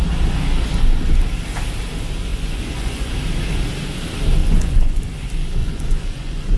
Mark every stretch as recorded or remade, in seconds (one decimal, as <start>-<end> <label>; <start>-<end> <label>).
0.0-2.3 recorded; 2.3-3.1 remade; 3.1-4.4 recorded; 4.4-5.0 remade; 5.0-5.6 recorded; 5.6-6.6 remade